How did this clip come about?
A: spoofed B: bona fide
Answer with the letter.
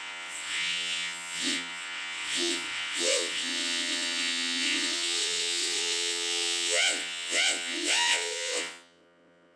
A